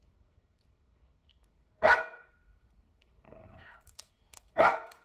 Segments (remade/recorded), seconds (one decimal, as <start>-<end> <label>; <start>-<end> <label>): 0.0-5.0 remade